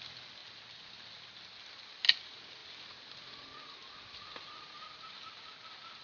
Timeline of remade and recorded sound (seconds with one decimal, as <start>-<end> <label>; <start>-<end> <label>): 0.0-6.0 recorded